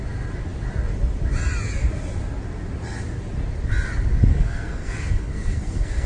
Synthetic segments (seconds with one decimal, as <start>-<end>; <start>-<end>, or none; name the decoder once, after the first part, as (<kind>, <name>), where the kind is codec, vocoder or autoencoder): 4.3-6.1 (codec, SNAC)